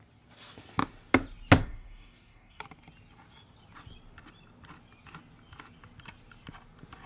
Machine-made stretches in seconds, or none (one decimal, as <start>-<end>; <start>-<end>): 1.6-2.6

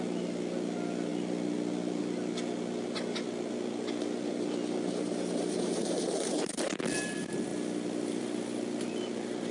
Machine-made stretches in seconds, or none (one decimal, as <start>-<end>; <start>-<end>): none

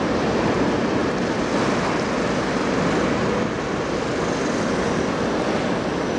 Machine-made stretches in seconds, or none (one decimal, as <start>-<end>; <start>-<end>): none

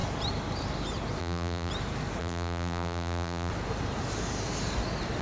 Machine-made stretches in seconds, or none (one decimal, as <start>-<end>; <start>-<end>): 1.2-1.7; 2.2-3.5

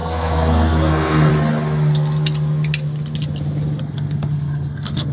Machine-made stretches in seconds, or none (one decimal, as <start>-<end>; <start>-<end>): 0.0-1.3; 3.8-5.1

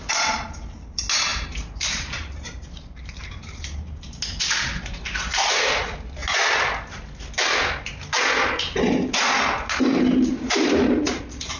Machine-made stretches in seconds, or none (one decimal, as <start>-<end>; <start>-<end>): 1.3-5.5; 10.3-11.2

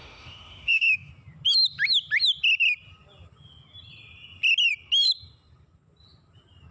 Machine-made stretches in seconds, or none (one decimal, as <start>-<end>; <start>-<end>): 0.0-1.1